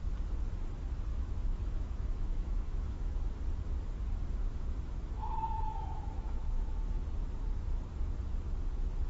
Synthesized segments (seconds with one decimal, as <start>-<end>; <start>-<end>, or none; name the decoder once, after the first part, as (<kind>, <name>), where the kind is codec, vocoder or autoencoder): 1.1-3.2 (autoencoder, DAC-VAE); 4.5-6.8